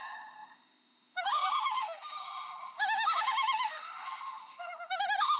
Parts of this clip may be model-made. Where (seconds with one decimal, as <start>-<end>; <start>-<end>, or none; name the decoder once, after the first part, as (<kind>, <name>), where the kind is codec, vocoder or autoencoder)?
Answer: 0.0-5.4 (autoencoder, DAC-VAE)